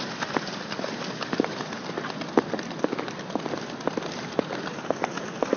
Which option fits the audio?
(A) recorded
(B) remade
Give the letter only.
A